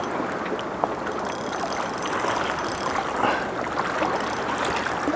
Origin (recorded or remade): recorded